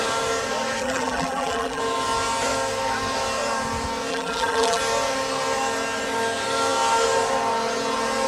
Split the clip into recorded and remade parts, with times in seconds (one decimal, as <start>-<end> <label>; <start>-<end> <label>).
0.0-0.8 recorded; 0.8-1.8 remade; 1.8-4.1 recorded; 4.1-4.8 remade; 4.8-8.3 recorded

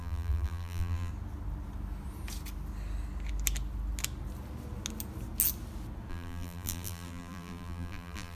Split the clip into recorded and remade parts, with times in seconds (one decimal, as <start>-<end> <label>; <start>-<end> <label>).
0.0-1.1 remade; 1.1-6.1 recorded; 6.1-8.3 remade